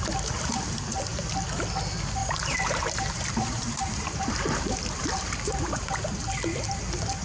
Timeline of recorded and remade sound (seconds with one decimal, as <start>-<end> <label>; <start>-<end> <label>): 0.0-2.2 recorded; 2.2-6.0 remade; 6.0-7.2 recorded